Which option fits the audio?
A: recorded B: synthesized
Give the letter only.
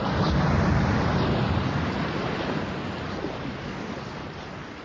A